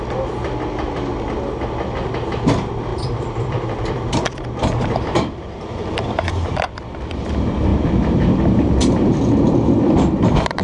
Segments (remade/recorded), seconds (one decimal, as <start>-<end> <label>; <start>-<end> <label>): 0.0-2.9 recorded; 2.9-7.3 remade; 7.3-7.7 recorded; 7.7-10.6 remade